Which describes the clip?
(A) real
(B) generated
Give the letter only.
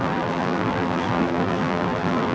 B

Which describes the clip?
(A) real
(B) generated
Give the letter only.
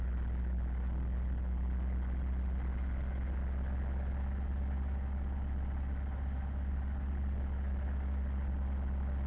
A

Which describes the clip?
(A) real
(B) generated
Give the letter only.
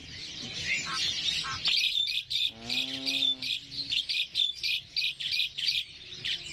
A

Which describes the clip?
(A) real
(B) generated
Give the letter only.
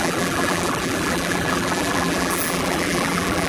B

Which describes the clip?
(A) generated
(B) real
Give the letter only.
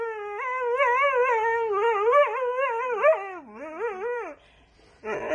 B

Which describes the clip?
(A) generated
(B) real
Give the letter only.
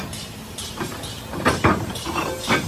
A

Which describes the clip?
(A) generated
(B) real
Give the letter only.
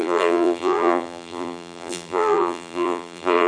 A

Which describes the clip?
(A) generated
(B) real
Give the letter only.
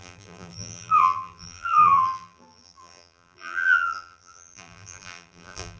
A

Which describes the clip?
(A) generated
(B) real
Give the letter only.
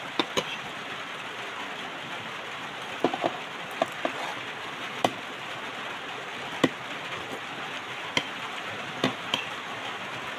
B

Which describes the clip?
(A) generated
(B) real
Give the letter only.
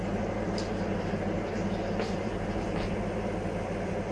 A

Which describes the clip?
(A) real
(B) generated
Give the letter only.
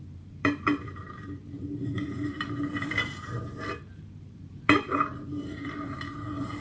B